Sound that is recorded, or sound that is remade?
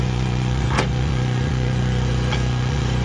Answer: remade